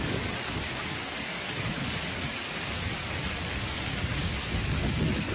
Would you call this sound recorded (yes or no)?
no